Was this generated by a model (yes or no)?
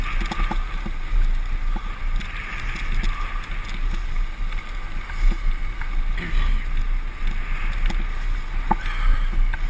no